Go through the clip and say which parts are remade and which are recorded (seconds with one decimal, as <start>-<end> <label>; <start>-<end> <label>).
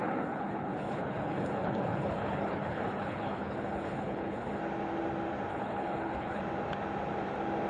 0.0-4.6 remade; 4.6-5.5 recorded; 5.5-6.4 remade; 6.4-7.7 recorded